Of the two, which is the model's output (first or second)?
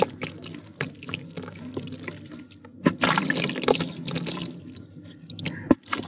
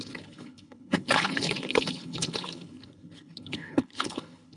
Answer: second